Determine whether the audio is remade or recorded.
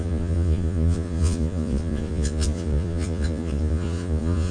remade